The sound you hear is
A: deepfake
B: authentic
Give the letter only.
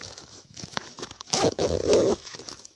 A